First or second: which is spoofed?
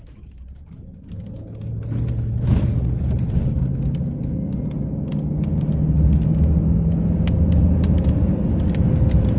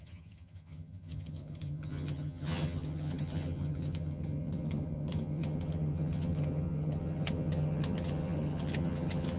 second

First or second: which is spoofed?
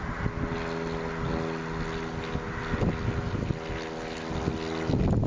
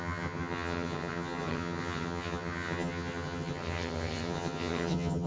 second